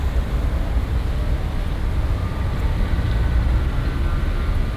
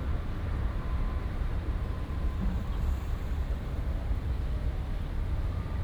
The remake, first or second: second